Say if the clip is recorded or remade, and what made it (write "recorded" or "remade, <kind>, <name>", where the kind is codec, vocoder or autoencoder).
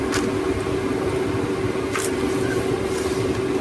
recorded